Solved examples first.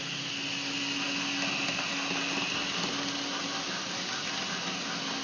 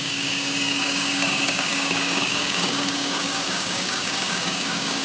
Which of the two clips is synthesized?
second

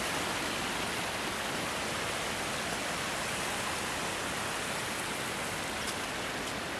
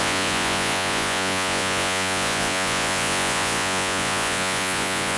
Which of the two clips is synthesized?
second